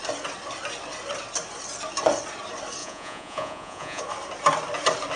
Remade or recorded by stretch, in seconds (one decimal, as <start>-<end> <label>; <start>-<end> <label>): 0.0-2.8 recorded; 2.8-4.0 remade; 4.0-5.2 recorded